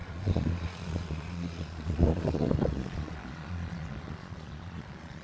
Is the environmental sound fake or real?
fake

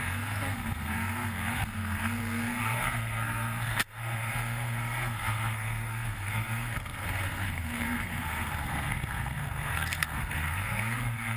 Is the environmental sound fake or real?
fake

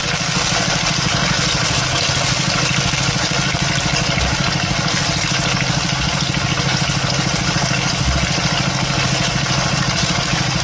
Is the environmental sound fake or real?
real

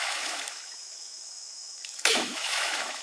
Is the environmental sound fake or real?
fake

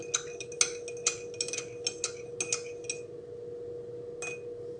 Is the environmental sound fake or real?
real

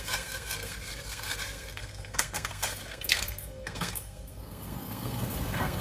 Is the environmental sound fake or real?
fake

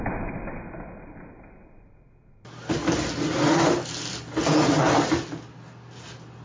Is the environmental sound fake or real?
real